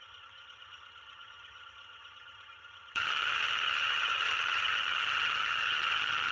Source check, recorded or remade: remade